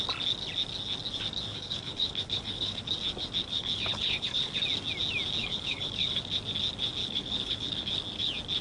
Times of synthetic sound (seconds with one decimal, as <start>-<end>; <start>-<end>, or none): 1.5-2.8; 3.4-4.6; 5.4-6.3; 7.0-7.9

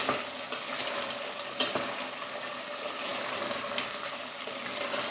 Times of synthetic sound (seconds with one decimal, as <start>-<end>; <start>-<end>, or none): none

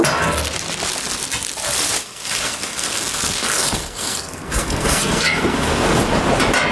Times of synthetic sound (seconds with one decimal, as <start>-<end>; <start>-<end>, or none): 2.0-6.0

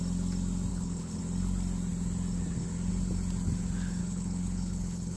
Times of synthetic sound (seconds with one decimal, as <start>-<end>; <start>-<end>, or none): 0.7-1.2; 4.0-5.2

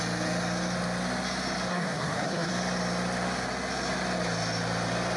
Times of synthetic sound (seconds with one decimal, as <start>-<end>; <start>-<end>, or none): 1.7-2.5

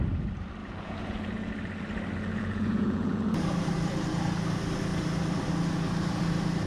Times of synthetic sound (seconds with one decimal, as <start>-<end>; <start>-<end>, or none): 0.6-1.5; 2.3-3.4